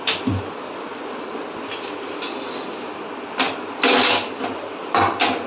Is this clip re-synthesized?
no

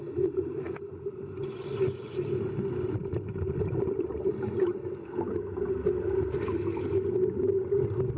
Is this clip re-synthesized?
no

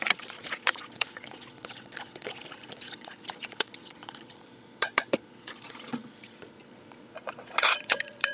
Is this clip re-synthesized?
yes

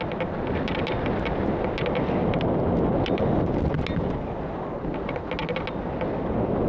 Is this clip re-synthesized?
no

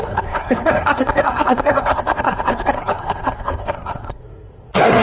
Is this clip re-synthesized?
yes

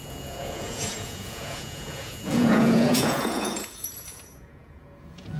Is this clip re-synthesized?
yes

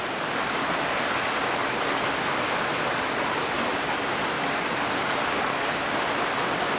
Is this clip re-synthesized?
no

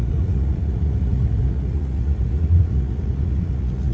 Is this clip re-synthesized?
yes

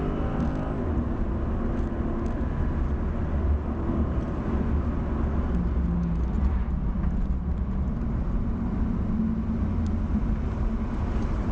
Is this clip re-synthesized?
no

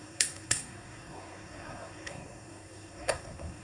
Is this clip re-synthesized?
yes